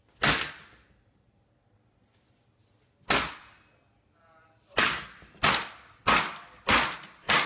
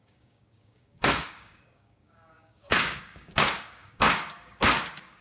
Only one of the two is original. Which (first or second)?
first